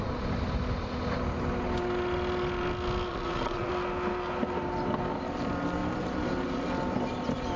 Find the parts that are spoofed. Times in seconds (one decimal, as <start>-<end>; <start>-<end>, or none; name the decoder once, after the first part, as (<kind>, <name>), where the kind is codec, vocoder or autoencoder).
3.1-3.7 (vocoder, WaveNeXt)